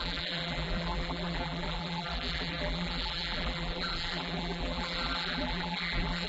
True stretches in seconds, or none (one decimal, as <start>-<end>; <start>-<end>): none